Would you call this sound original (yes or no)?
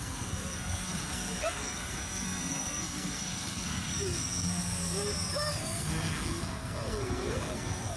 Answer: no